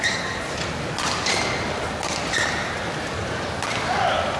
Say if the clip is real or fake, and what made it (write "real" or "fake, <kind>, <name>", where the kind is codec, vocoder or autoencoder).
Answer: real